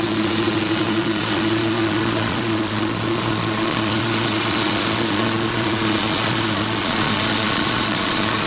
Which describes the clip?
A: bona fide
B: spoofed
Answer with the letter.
B